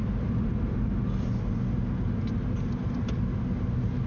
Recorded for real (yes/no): yes